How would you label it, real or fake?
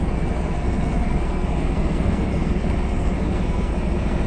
fake